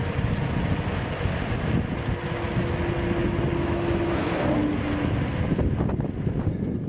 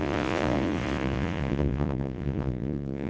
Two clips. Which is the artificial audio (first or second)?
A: second